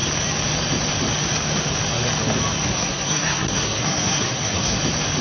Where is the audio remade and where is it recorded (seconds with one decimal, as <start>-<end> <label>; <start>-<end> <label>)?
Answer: 0.0-2.7 recorded; 2.7-4.8 remade; 4.8-5.2 recorded